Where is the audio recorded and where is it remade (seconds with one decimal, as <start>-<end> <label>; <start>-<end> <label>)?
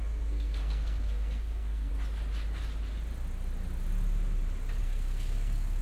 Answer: 0.0-1.9 remade; 1.9-4.8 recorded; 4.8-5.8 remade